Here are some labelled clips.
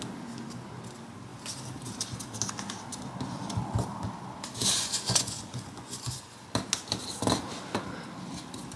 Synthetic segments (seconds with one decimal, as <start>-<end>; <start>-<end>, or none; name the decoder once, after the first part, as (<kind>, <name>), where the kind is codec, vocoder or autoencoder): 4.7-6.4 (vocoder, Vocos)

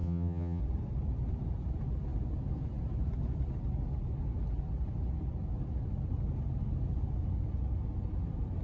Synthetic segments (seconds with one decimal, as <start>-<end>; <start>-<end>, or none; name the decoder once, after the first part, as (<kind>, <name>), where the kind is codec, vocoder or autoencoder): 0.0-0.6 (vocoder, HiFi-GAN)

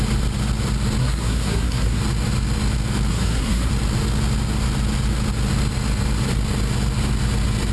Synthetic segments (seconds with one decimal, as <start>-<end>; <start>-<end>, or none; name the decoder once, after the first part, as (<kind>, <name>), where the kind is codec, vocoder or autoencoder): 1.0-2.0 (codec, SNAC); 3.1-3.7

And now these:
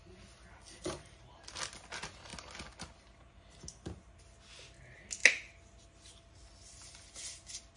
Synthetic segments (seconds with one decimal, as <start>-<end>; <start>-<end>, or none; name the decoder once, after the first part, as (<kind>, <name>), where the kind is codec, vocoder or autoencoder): none

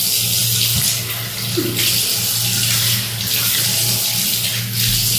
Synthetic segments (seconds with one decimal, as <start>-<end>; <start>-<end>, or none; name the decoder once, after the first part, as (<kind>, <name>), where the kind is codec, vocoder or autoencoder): none

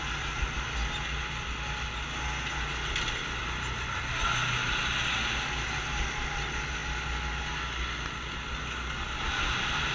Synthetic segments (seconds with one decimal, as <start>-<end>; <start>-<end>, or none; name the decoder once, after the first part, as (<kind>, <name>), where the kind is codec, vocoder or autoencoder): none

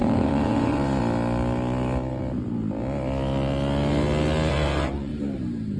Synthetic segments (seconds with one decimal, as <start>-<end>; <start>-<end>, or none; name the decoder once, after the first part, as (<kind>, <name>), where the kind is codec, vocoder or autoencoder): 0.0-1.0 (vocoder, Vocos); 4.5-5.1

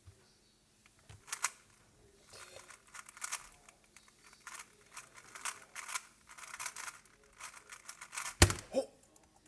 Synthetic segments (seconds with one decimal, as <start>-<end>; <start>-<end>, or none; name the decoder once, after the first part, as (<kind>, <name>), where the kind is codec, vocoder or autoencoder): none